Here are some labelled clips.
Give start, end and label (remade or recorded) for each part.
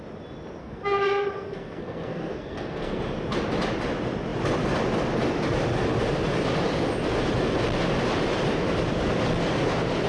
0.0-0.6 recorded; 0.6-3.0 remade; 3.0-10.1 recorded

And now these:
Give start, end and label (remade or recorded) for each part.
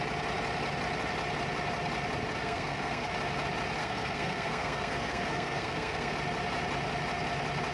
0.0-2.4 recorded; 2.4-3.1 remade; 3.1-3.8 recorded; 3.8-6.1 remade; 6.1-7.7 recorded